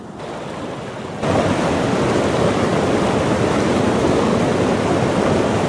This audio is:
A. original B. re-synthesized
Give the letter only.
A